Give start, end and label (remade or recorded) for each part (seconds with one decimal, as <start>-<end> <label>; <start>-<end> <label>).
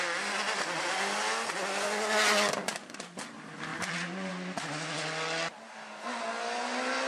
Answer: 0.0-7.1 recorded